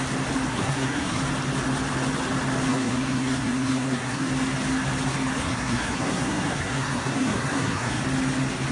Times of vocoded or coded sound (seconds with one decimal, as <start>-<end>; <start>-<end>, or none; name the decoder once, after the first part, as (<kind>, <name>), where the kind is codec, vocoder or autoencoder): 0.5-1.2 (codec, SNAC); 2.7-4.3; 5.4-8.0